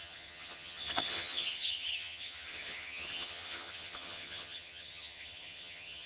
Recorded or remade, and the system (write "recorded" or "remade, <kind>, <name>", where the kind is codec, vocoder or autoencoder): remade, vocoder, HiFi-GAN